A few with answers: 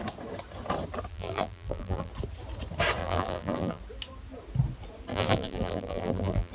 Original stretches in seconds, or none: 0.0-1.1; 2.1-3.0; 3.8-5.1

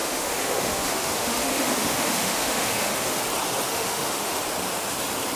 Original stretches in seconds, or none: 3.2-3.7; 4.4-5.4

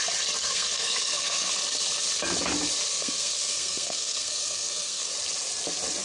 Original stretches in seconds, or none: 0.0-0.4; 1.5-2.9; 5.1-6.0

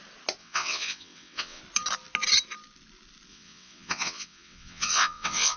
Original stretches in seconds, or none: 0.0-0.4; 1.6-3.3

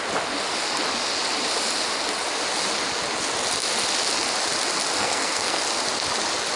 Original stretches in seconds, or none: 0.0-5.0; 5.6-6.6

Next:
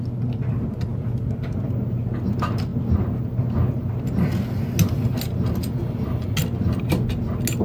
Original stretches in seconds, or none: 0.0-0.9; 1.7-7.6